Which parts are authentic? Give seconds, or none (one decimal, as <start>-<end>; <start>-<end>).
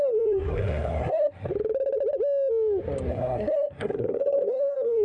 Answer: 1.5-3.1